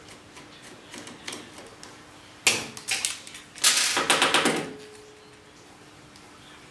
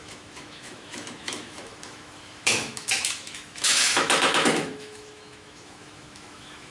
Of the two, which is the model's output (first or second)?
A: second